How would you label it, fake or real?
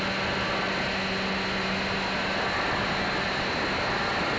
real